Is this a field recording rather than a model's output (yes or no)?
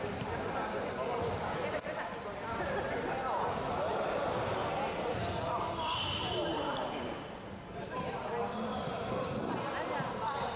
yes